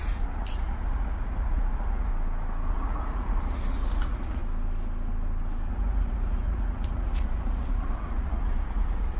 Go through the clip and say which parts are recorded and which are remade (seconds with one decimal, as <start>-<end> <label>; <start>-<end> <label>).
0.0-2.1 remade; 2.1-2.7 recorded; 2.7-4.4 remade; 4.4-5.7 recorded; 5.7-9.2 remade